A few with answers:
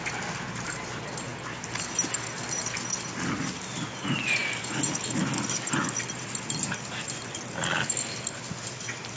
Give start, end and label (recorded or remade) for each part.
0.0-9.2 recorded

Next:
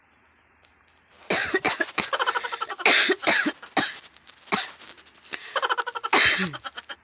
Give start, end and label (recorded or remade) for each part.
0.0-1.4 recorded; 1.4-2.1 remade; 2.1-7.0 recorded

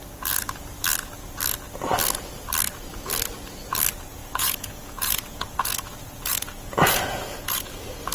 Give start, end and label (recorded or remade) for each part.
0.0-4.2 recorded; 4.2-7.6 remade; 7.6-8.1 recorded